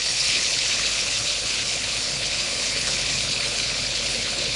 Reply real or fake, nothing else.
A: fake